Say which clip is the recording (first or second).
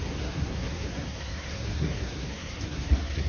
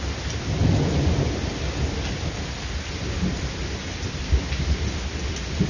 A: second